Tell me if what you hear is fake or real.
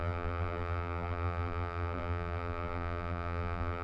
fake